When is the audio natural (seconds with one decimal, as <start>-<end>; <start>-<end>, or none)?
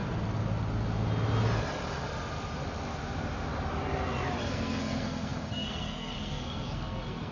0.0-4.4